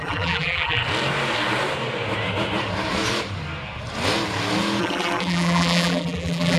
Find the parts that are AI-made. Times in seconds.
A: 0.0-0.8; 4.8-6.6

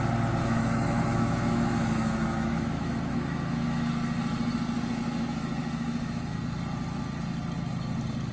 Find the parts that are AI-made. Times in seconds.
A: 0.4-3.9; 5.6-6.4

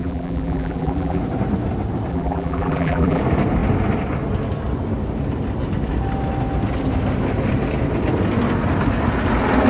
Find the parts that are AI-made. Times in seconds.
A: 0.0-1.2; 2.1-3.2

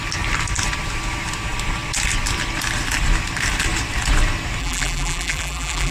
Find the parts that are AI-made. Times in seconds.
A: 4.6-5.9

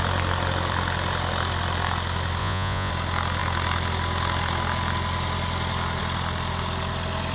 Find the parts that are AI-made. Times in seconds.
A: 2.4-2.9

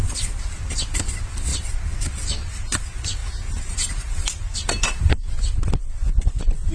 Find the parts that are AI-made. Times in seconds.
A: 0.0-0.6